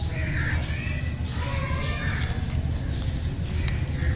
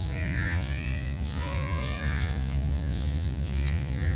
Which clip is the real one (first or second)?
first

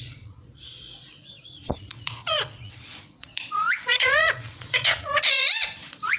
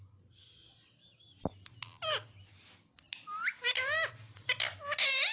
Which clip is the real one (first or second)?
second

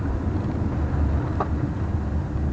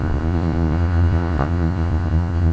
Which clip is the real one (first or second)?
first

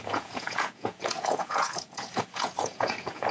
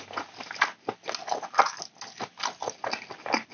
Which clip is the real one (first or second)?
second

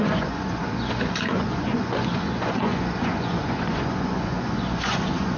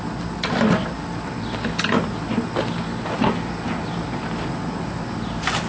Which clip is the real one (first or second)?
second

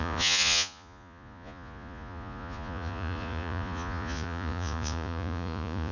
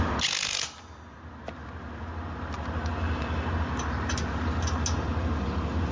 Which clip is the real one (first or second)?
second